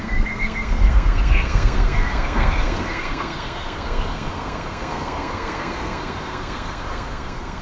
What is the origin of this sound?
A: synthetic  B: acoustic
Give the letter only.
A